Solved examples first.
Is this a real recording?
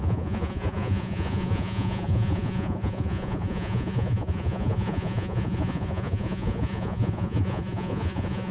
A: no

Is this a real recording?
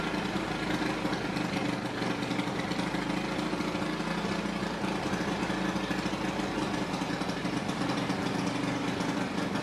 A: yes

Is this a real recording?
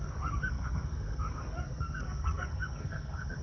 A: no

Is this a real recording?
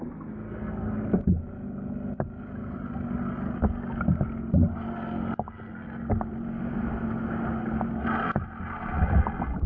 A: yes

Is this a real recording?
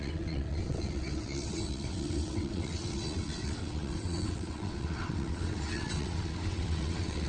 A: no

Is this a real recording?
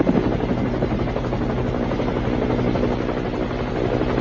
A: yes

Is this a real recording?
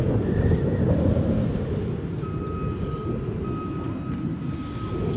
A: yes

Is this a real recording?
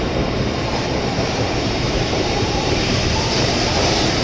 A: no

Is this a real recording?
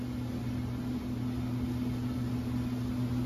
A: yes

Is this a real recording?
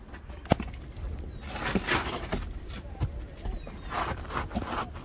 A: yes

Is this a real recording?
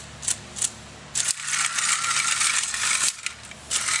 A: yes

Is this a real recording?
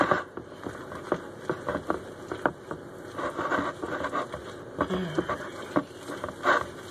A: yes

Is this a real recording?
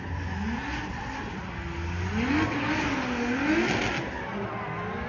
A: yes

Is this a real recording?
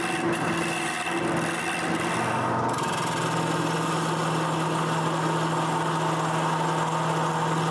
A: yes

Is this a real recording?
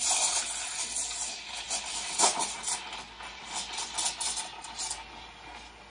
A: yes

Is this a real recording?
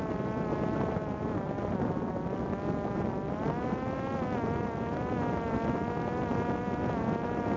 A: yes